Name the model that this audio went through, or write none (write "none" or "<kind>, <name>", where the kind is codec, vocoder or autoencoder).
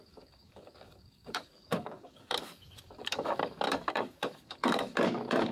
codec, DAC